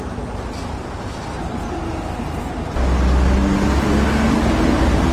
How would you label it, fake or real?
real